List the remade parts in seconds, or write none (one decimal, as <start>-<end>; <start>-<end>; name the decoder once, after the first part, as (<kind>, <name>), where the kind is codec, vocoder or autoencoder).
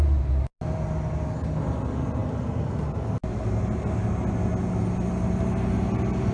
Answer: none